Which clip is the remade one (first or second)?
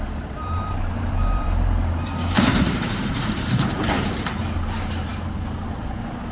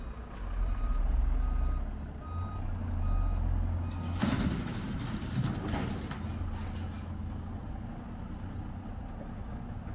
first